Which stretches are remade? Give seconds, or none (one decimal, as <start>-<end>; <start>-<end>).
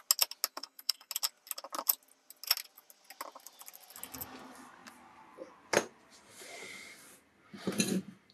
0.5-1.1